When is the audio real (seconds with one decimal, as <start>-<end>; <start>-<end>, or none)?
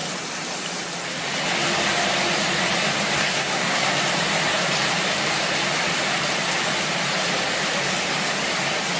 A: 0.0-3.2; 3.9-9.0